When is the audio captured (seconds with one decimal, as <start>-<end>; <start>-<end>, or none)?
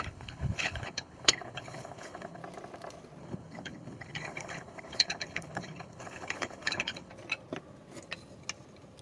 2.4-3.2; 7.1-9.0